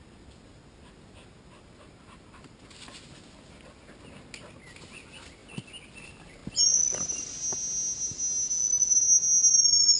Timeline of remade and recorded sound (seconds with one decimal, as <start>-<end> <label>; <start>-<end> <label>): 0.0-5.4 recorded; 5.4-5.9 remade; 5.9-10.0 recorded